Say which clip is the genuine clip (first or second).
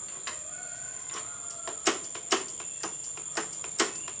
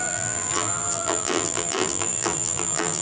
first